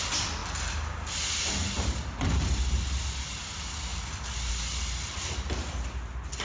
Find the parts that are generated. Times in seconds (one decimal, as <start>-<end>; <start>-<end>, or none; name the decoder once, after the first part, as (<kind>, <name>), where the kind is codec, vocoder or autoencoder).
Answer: none